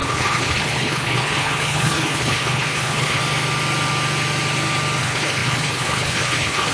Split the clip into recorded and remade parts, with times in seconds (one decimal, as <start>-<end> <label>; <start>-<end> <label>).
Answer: 0.0-3.2 remade; 3.2-5.0 recorded; 5.0-6.7 remade